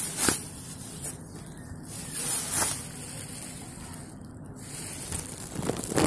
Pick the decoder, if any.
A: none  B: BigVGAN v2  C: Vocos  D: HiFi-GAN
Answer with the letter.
A